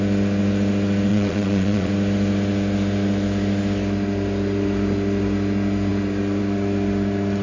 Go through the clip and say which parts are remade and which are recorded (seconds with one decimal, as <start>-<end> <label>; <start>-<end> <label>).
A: 0.0-1.1 recorded; 1.1-1.9 remade; 1.9-7.4 recorded